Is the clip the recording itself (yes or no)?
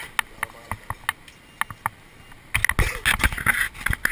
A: yes